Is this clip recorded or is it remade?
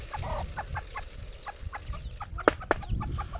recorded